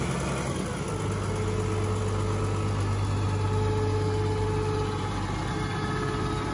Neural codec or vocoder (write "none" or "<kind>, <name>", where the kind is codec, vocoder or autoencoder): none